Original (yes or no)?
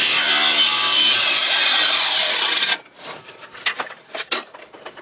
no